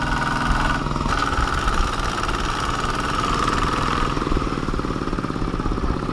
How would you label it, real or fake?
real